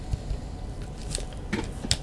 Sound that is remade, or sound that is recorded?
recorded